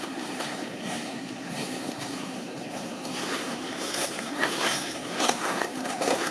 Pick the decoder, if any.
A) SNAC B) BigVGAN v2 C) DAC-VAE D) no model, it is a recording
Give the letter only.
A